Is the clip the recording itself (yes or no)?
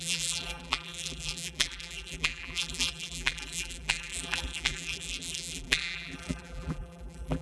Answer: no